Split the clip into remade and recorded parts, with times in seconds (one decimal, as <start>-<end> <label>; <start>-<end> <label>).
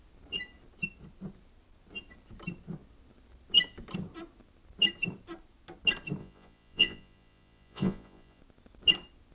0.0-6.2 recorded; 6.2-8.4 remade; 8.4-9.3 recorded